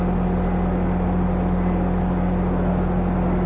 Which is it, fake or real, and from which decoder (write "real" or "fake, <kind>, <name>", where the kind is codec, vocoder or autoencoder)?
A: real